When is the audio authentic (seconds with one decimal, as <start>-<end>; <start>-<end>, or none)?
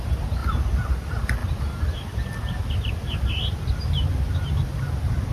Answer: 0.0-5.3